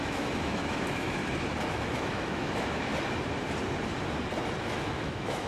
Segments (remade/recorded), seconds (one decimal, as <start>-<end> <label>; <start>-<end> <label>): 0.0-1.2 remade; 1.2-1.7 recorded; 1.7-2.9 remade; 2.9-4.6 recorded; 4.6-5.5 remade